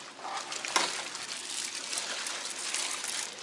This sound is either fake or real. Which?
real